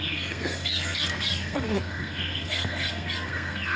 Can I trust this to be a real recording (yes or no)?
no